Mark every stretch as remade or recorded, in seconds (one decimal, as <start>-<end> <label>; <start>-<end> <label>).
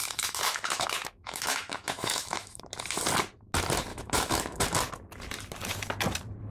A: 0.0-2.6 remade; 2.6-3.9 recorded; 3.9-4.6 remade; 4.6-6.5 recorded